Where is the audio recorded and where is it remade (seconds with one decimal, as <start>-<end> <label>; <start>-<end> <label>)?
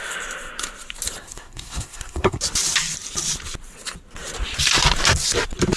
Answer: 0.0-1.2 recorded; 1.2-2.4 remade; 2.4-5.8 recorded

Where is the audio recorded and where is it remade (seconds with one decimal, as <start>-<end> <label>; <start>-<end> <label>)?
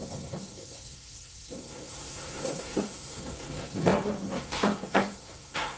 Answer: 0.0-5.8 remade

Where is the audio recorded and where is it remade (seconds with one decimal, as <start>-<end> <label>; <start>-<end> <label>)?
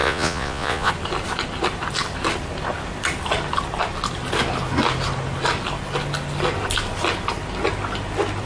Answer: 0.0-0.9 remade; 0.9-8.5 recorded